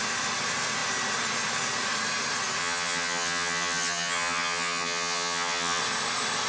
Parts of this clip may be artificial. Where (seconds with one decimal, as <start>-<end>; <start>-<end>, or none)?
2.6-5.8